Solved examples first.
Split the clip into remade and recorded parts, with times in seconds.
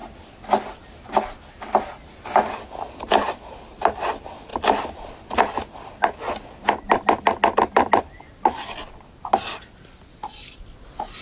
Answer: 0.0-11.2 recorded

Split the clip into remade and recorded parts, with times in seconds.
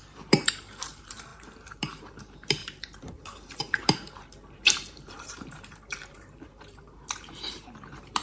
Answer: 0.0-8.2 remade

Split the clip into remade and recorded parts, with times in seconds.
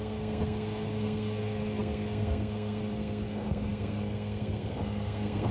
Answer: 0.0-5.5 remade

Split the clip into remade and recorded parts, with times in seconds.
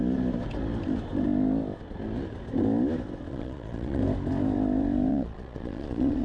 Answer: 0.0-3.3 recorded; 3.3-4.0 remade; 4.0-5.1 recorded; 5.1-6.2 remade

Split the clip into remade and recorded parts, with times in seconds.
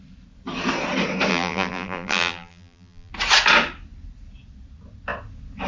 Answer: 0.0-1.3 recorded; 1.3-3.1 remade; 3.1-5.7 recorded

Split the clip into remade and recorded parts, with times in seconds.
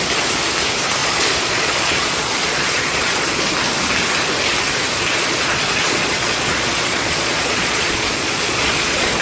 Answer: 0.0-1.0 recorded; 1.0-3.5 remade; 3.5-5.1 recorded; 5.1-9.2 remade